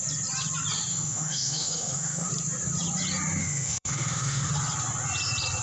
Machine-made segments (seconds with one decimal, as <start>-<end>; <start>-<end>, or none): 0.9-2.3; 3.4-4.5